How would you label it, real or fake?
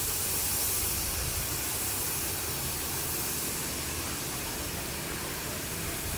real